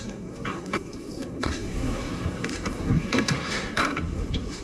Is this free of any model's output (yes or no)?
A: no